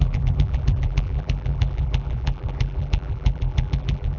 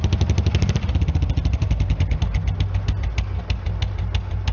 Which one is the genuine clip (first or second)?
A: second